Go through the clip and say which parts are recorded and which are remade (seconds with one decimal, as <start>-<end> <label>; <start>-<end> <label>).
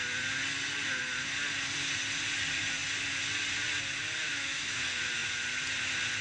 0.0-4.3 recorded; 4.3-4.8 remade; 4.8-6.2 recorded